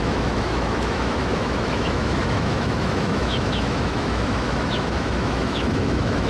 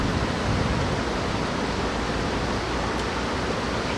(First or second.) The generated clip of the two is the first